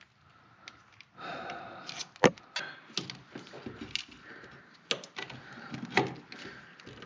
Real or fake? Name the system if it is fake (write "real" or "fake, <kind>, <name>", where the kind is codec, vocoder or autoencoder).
real